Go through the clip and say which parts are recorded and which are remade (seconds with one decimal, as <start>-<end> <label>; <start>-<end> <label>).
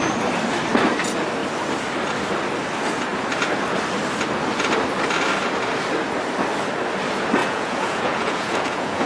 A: 0.0-7.4 recorded; 7.4-9.1 remade